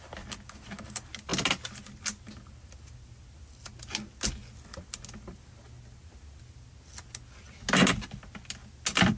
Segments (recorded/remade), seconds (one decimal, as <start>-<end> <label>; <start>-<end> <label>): 0.0-9.2 recorded